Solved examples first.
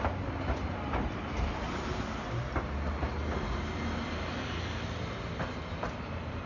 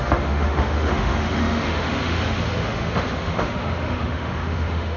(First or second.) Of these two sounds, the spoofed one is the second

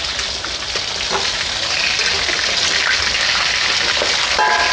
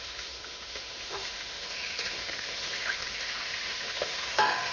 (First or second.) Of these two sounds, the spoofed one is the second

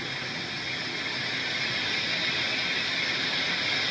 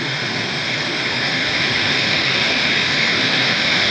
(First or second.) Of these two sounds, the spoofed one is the second